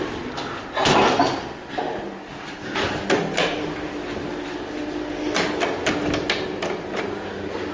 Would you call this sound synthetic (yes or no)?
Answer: no